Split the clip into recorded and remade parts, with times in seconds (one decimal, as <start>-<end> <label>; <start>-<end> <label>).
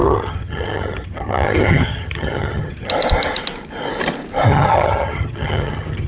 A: 0.0-2.9 remade; 2.9-4.5 recorded; 4.5-6.1 remade